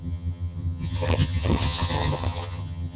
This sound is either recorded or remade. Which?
remade